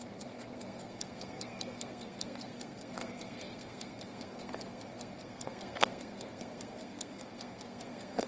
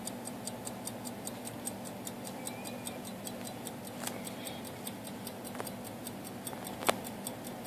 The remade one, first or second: first